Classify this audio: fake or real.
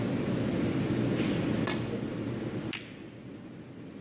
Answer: real